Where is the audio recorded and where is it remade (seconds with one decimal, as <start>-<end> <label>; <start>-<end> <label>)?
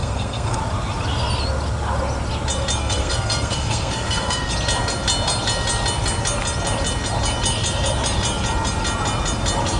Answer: 0.0-0.6 remade; 0.6-2.8 recorded; 2.8-4.5 remade; 4.5-9.8 recorded